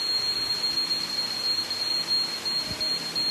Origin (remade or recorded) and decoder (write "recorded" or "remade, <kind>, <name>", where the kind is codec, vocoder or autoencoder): recorded